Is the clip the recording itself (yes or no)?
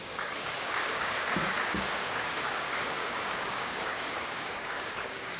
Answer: no